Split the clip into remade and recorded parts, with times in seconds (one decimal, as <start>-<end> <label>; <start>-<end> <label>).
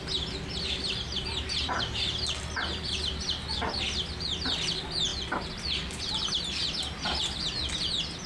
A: 0.0-8.3 recorded